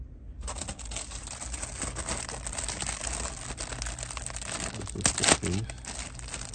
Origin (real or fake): real